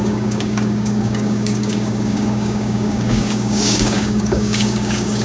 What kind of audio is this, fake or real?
fake